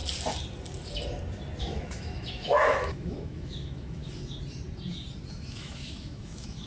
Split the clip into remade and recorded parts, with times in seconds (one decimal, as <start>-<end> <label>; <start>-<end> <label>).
0.0-1.6 recorded; 1.6-4.0 remade; 4.0-5.3 recorded; 5.3-6.7 remade